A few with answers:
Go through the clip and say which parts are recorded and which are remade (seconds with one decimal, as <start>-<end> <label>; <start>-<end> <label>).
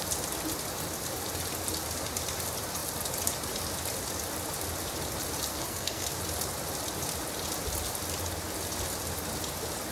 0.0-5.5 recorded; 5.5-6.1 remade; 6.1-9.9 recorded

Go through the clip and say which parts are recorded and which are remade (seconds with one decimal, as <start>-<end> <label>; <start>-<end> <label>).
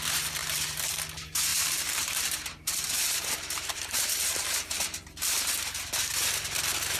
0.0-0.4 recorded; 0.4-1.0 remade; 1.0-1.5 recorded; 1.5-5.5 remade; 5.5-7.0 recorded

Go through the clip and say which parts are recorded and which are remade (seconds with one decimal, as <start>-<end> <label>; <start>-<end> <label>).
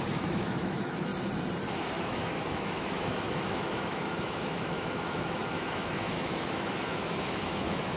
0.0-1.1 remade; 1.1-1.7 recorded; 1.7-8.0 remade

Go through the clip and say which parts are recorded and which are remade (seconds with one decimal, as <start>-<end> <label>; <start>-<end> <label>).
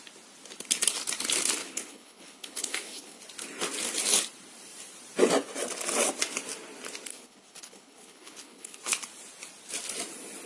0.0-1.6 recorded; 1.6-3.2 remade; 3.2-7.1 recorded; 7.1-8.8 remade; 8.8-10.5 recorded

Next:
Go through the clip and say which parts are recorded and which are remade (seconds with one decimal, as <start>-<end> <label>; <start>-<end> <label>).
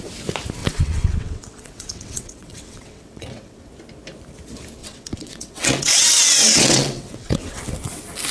0.0-0.6 recorded; 0.6-3.7 remade; 3.7-4.8 recorded; 4.8-7.6 remade; 7.6-8.3 recorded